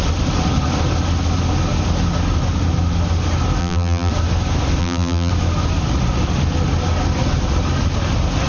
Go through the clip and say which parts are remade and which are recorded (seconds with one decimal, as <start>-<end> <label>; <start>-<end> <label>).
0.0-3.6 recorded; 3.6-4.1 remade; 4.1-4.8 recorded; 4.8-5.3 remade; 5.3-8.5 recorded